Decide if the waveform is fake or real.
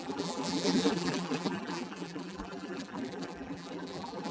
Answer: fake